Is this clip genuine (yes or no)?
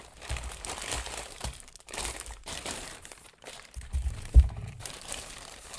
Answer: no